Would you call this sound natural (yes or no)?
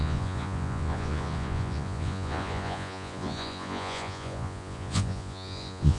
no